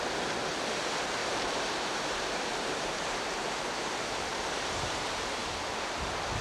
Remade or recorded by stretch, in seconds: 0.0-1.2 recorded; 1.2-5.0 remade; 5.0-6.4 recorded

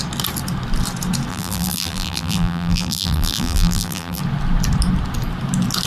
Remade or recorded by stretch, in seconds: 0.0-1.3 recorded; 1.3-4.2 remade; 4.2-5.9 recorded

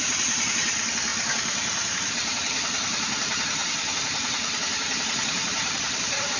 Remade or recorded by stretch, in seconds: 0.0-6.4 remade

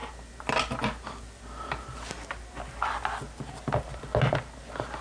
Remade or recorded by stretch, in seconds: 0.0-5.0 recorded

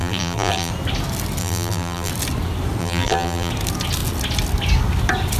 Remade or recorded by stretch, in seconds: 0.0-0.7 remade; 0.7-1.4 recorded; 1.4-2.1 remade; 2.1-2.8 recorded; 2.8-3.5 remade; 3.5-5.4 recorded